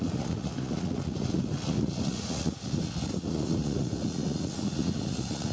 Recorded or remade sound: remade